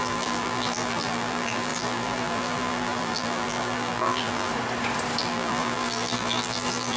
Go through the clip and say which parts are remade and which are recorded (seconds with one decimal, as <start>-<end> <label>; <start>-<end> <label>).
0.0-4.5 remade; 4.5-5.2 recorded; 5.2-7.0 remade